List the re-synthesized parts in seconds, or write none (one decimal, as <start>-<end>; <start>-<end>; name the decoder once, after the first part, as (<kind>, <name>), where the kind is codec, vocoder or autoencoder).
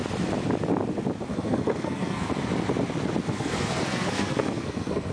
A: 1.3-2.3 (codec, SNAC); 3.2-5.1